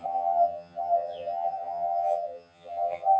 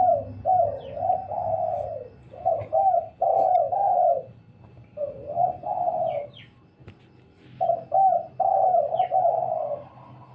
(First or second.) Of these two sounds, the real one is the second